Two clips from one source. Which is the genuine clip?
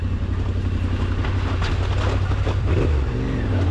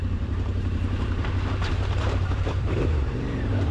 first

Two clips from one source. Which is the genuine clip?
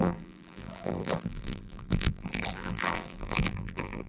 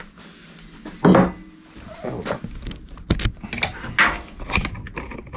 second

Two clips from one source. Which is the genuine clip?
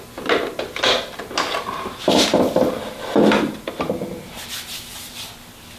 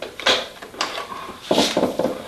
first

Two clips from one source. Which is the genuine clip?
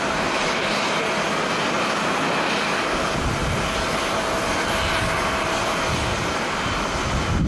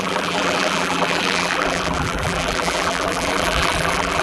first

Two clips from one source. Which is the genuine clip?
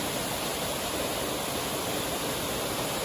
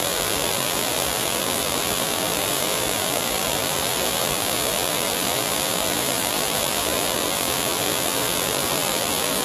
first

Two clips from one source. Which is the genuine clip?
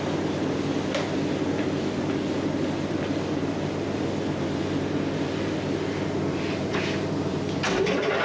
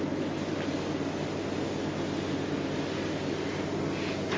second